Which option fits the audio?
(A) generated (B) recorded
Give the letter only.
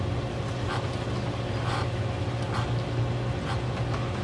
B